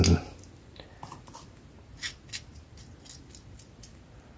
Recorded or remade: recorded